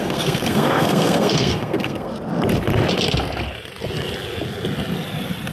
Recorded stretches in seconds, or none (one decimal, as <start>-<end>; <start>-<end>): 2.1-5.5

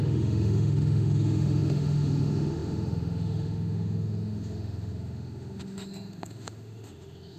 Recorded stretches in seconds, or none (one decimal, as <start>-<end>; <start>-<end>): none

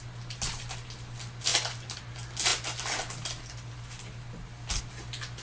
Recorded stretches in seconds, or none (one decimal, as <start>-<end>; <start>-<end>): 0.0-5.4